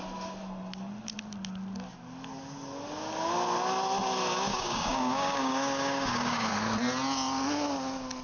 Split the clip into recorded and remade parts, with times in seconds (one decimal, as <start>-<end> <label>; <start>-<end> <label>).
0.0-4.5 recorded; 4.5-6.5 remade; 6.5-8.2 recorded